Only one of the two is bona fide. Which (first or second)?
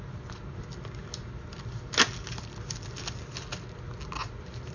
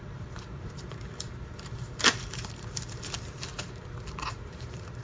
first